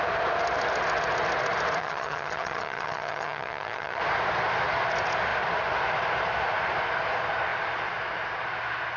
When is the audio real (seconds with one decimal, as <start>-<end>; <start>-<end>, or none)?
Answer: 0.0-1.8; 4.0-9.0